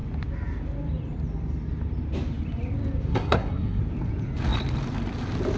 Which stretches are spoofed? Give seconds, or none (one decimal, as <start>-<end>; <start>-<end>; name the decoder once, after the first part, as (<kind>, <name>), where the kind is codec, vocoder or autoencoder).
3.1-3.8 (codec, SNAC)